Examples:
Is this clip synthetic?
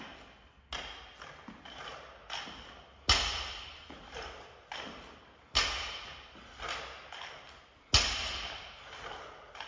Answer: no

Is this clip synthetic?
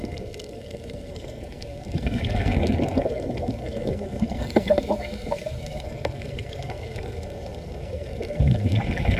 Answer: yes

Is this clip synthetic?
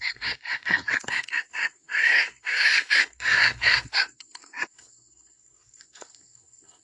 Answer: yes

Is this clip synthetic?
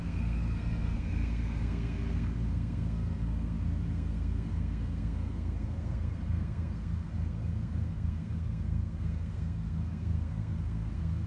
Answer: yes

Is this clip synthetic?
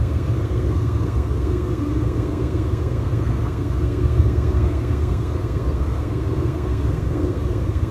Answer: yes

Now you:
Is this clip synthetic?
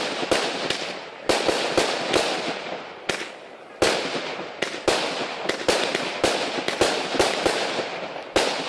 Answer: no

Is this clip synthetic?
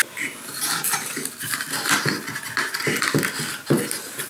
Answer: no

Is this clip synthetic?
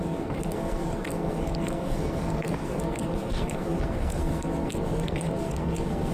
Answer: yes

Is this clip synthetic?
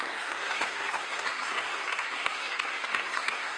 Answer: yes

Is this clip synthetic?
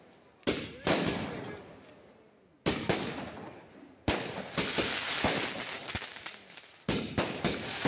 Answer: no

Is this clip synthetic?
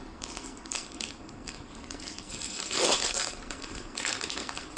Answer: yes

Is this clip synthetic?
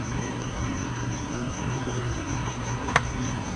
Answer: yes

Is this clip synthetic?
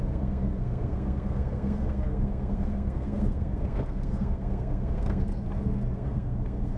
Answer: yes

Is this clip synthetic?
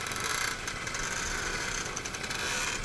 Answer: no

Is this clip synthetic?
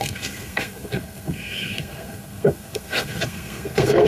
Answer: yes